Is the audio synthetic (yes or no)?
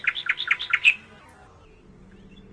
no